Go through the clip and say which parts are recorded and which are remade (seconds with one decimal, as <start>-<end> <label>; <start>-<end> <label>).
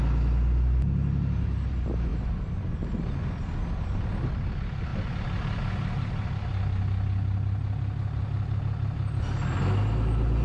0.0-10.4 recorded